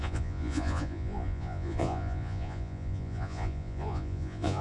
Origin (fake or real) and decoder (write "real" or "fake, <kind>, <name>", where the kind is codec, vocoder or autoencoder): fake, vocoder, Vocos